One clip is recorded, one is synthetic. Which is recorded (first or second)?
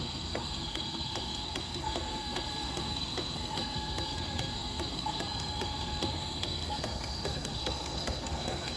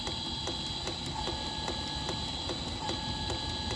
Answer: second